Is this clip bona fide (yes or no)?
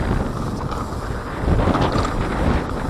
yes